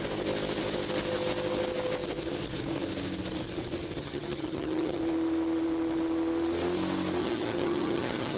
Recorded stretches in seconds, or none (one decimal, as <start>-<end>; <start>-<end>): 0.0-4.0; 5.0-7.2